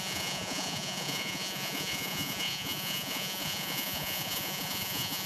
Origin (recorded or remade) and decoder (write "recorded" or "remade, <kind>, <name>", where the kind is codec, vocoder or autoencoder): remade, vocoder, Vocos